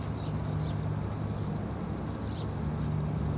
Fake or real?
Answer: real